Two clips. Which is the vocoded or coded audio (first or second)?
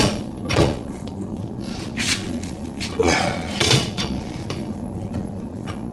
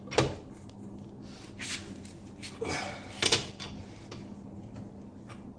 first